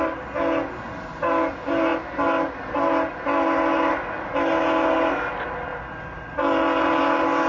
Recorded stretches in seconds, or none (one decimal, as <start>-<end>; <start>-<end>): 0.0-7.5